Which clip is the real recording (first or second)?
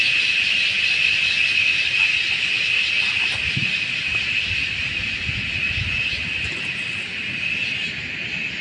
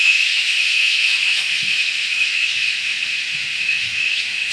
first